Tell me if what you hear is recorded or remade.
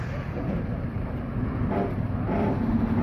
remade